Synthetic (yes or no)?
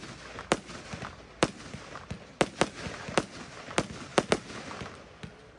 no